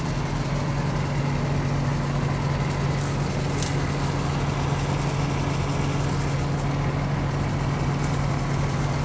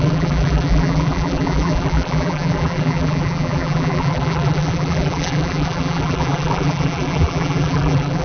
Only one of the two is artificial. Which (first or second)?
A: second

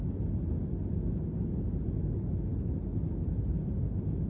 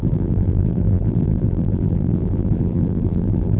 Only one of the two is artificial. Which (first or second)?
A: second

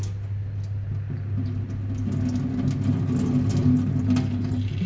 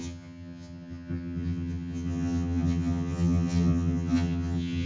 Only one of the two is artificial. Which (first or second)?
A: second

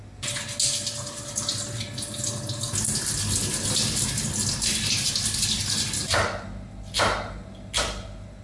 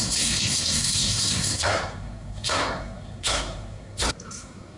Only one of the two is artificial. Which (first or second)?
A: second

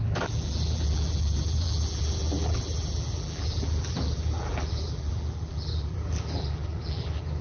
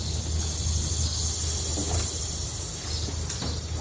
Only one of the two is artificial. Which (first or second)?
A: first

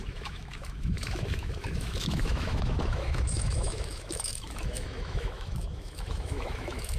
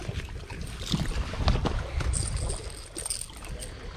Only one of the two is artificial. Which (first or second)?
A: first